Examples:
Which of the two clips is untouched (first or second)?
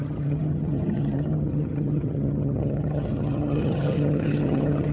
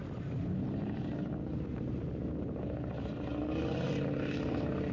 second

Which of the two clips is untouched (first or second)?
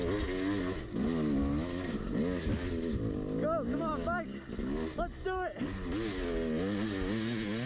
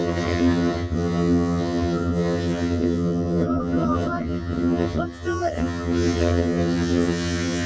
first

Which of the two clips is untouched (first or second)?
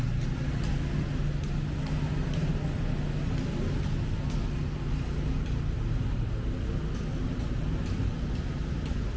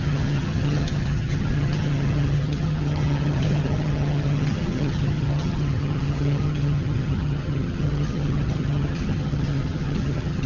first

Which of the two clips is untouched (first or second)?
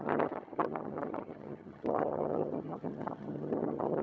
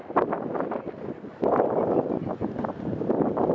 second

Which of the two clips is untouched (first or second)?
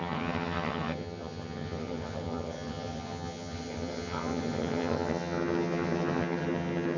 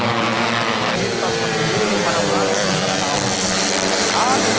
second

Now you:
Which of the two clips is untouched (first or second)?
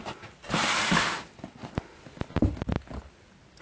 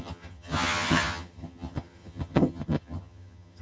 first